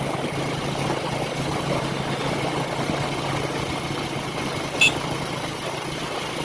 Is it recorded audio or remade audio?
recorded